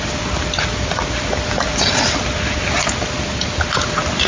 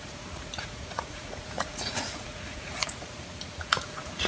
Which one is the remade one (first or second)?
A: second